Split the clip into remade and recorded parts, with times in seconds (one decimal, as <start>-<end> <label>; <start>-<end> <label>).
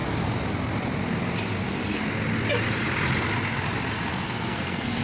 0.0-4.1 recorded; 4.1-5.0 remade